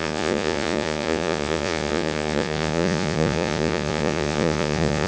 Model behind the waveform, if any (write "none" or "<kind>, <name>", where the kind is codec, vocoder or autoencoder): vocoder, Vocos